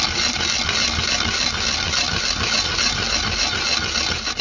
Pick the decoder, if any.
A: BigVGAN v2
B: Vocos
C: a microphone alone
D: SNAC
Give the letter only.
C